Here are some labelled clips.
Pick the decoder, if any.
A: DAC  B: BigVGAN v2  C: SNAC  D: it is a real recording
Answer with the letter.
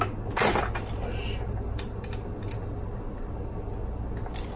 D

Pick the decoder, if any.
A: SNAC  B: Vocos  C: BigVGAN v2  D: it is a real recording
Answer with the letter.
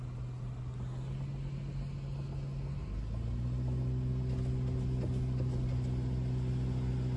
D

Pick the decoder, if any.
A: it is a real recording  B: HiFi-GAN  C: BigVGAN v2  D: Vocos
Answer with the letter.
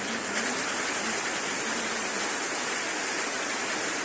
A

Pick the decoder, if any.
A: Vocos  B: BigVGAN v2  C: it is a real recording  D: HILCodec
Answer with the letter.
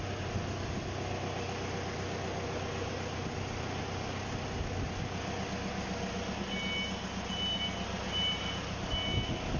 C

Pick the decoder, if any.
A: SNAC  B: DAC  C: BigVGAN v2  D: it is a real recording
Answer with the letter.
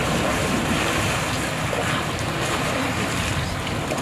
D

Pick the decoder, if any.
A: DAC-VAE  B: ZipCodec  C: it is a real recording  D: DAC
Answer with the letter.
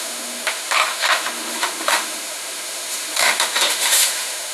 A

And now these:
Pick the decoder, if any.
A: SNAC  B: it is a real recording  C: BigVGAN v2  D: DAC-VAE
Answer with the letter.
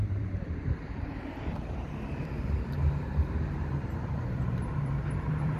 C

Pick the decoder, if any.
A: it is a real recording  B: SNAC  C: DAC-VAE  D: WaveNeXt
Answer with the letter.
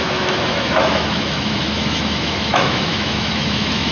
C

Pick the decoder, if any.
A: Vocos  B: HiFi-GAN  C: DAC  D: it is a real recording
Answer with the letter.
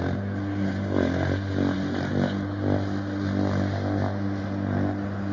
D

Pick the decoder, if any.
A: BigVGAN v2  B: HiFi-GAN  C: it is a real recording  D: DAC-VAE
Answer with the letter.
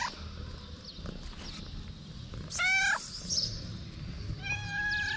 C